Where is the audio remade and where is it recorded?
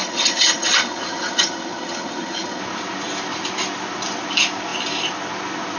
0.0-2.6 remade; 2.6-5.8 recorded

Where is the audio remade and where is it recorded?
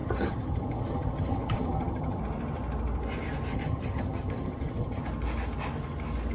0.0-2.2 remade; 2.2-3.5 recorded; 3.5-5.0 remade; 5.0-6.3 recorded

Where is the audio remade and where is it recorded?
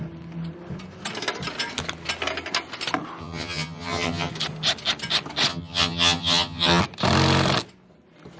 0.0-3.2 recorded; 3.2-4.3 remade; 4.3-5.5 recorded; 5.5-6.8 remade; 6.8-8.4 recorded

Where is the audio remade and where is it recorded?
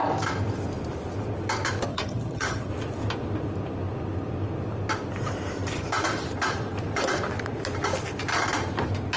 0.0-1.9 recorded; 1.9-2.7 remade; 2.7-9.2 recorded